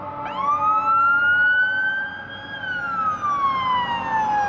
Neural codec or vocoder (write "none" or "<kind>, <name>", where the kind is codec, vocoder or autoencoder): none